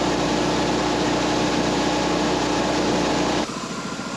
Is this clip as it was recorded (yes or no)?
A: yes